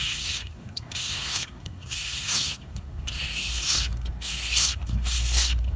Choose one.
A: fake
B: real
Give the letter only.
A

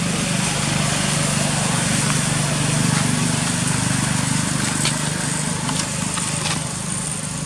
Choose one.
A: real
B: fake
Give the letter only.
A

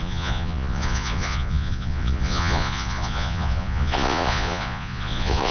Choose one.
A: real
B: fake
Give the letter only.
B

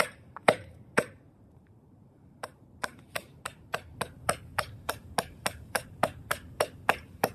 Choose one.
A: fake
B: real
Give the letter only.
A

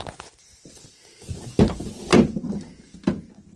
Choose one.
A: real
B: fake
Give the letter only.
A